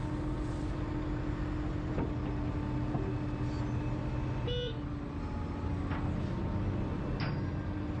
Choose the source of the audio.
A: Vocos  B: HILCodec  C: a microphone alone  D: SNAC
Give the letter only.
C